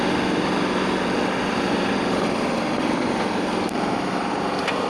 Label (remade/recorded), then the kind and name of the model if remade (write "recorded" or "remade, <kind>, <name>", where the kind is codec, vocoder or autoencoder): recorded